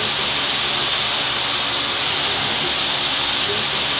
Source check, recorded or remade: recorded